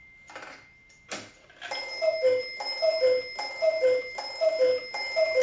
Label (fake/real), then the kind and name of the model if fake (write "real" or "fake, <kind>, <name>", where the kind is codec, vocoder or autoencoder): real